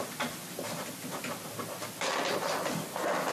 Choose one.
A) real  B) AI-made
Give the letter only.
A